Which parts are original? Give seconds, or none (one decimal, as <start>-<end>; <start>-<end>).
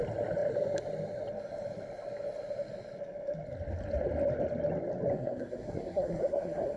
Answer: 0.0-5.1